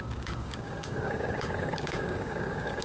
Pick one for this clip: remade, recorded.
remade